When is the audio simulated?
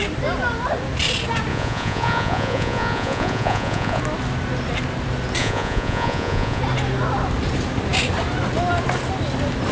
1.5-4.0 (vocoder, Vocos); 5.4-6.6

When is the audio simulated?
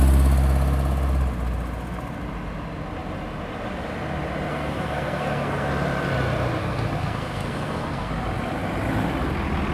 4.5-5.7 (codec, SNAC); 6.6-8.1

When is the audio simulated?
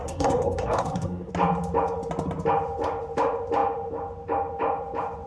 0.0-1.3 (codec, SNAC)